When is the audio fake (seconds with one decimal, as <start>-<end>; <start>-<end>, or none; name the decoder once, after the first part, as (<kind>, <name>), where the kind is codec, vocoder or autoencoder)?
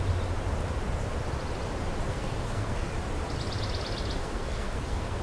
2.1-2.9 (codec, SNAC); 4.2-5.2